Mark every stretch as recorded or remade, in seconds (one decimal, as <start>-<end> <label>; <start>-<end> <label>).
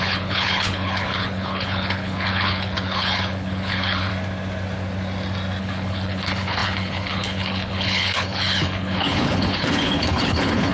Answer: 0.0-4.1 remade; 4.1-5.6 recorded; 5.6-10.7 remade